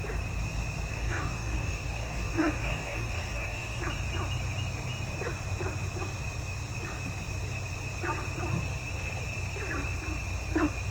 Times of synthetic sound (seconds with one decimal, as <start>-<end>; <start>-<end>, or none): 0.9-3.8